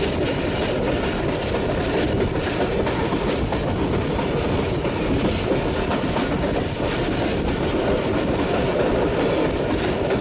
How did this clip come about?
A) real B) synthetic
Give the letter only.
A